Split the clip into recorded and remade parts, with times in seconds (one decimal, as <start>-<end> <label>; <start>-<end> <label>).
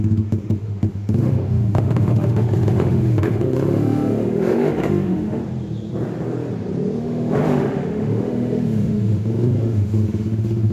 0.0-5.4 remade; 5.4-7.0 recorded; 7.0-10.7 remade